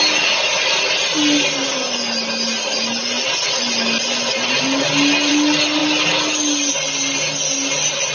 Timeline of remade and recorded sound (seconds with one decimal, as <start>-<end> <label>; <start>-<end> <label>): 0.0-8.1 recorded

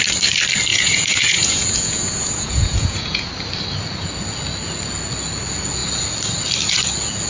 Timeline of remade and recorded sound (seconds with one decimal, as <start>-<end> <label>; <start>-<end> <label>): 0.0-0.7 recorded; 0.7-3.3 remade; 3.3-7.3 recorded

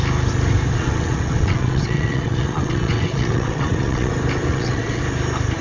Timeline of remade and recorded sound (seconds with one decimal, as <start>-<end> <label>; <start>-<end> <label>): 0.0-0.7 recorded; 0.7-4.1 remade; 4.1-4.5 recorded; 4.5-5.0 remade; 5.0-5.6 recorded

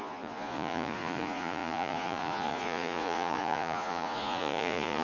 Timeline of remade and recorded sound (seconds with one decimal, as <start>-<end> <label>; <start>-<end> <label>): 0.0-5.0 remade

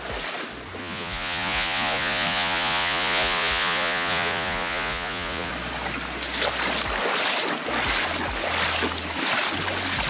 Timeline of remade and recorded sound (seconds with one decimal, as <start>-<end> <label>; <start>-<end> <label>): 0.0-0.8 recorded; 0.8-5.5 remade; 5.5-10.1 recorded

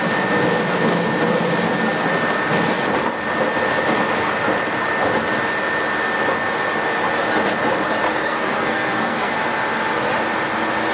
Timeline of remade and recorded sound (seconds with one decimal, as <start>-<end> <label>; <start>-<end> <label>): 0.0-8.1 recorded; 8.1-9.3 remade; 9.3-10.9 recorded

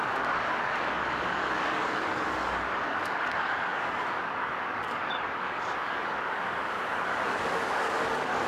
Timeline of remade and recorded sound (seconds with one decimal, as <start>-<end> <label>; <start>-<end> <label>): 0.0-8.5 remade

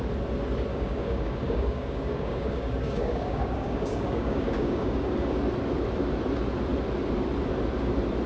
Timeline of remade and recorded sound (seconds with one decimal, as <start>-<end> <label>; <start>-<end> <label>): 0.0-0.7 recorded; 0.7-5.4 remade; 5.4-8.3 recorded